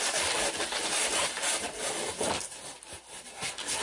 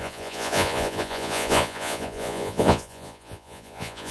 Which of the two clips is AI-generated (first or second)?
second